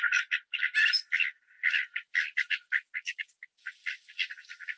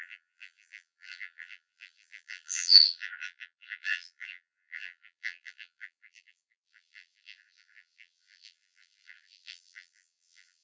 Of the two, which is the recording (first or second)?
first